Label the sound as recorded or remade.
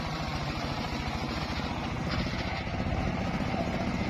remade